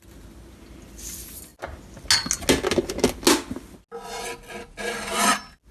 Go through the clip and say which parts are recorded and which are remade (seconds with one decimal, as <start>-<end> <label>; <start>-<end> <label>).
0.0-5.7 recorded